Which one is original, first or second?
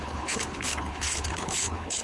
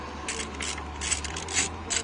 second